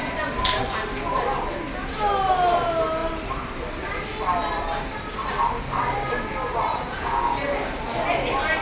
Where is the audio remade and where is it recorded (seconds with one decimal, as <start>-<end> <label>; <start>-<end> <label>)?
0.0-6.7 recorded; 6.7-7.2 remade; 7.2-8.6 recorded